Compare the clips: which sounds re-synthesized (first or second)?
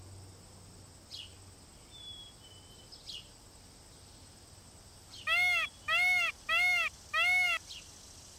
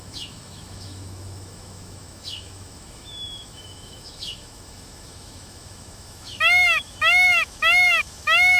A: second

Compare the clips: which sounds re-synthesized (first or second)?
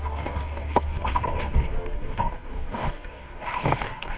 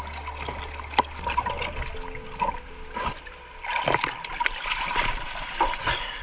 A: first